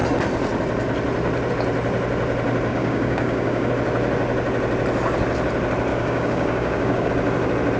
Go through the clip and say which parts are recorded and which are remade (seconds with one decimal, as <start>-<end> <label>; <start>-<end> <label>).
0.0-2.7 recorded; 2.7-3.7 remade; 3.7-5.9 recorded; 5.9-7.1 remade; 7.1-7.8 recorded